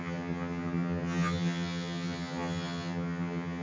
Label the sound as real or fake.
fake